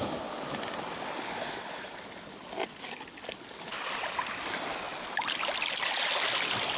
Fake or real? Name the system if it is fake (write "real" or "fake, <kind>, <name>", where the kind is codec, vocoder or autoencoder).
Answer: real